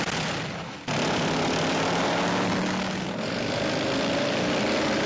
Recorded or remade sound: recorded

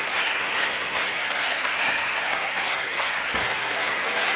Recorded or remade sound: remade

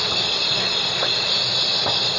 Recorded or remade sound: recorded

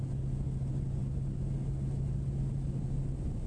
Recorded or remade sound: recorded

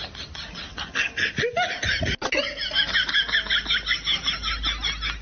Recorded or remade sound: recorded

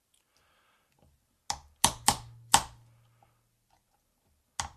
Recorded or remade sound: recorded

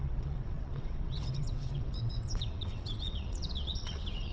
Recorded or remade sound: remade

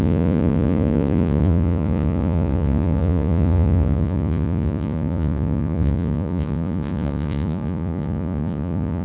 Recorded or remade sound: remade